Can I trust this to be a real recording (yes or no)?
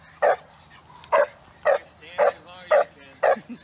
yes